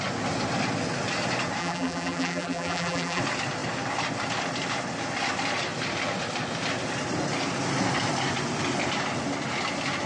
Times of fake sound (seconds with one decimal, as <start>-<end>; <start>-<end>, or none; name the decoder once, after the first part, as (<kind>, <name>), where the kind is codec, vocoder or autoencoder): 1.6-3.2 (vocoder, BigVGAN v2)